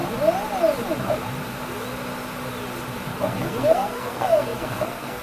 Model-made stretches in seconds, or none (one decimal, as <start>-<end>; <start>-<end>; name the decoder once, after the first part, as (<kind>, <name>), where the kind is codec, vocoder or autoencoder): 3.1-5.2 (codec, SNAC)

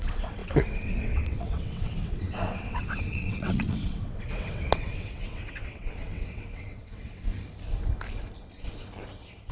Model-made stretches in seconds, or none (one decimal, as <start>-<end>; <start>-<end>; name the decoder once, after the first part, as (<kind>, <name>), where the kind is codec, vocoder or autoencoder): 0.0-7.3 (vocoder, WaveNeXt)

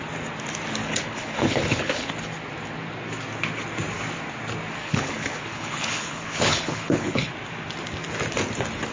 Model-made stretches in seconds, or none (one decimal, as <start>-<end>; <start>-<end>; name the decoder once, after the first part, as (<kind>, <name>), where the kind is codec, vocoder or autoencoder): 0.8-2.1 (codec, HILCodec); 4.8-7.3

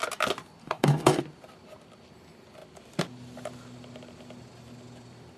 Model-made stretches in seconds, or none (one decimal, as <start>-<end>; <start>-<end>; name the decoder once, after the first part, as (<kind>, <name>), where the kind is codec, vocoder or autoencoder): 0.6-1.2 (codec, DAC)

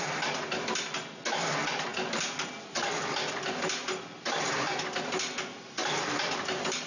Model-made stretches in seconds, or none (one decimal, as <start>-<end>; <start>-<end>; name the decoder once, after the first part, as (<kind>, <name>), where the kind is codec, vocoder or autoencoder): none

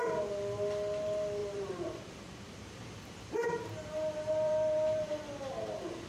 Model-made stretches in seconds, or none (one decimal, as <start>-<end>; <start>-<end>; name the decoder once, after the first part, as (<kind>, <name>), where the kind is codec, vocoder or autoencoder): 1.4-5.1 (vocoder, BigVGAN v2)

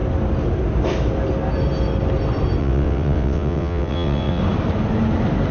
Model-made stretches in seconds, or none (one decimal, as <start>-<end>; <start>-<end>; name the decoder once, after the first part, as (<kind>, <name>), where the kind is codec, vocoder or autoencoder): 2.6-4.4 (vocoder, WaveNeXt)